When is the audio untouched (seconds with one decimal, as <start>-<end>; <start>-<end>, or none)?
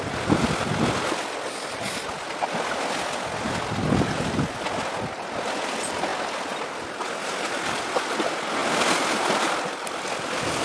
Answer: 0.0-10.6